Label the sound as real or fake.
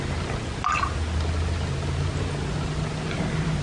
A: real